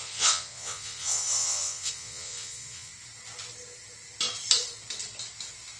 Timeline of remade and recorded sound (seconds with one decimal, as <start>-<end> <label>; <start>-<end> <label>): 0.0-2.9 remade; 2.9-5.8 recorded